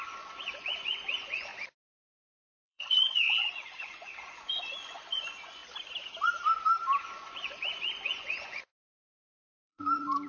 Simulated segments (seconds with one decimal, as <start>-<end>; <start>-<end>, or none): 0.0-1.5; 2.2-5.6; 7.0-10.3